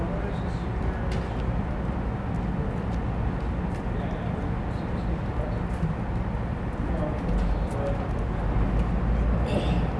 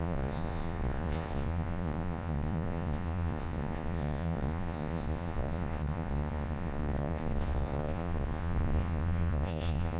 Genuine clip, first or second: first